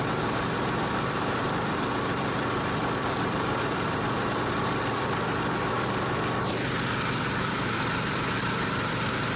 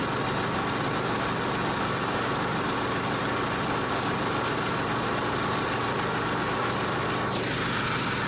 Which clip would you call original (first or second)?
second